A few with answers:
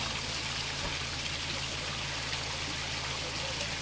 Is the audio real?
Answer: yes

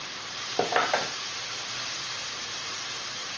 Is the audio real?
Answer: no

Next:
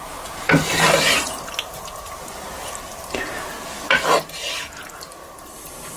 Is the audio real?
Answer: yes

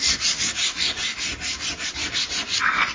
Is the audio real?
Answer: no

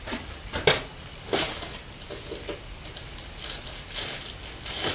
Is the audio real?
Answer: yes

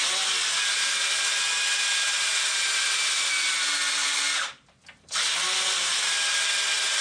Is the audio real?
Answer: yes